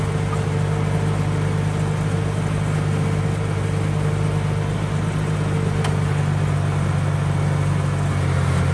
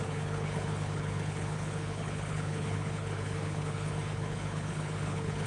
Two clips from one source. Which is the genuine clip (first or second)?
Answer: first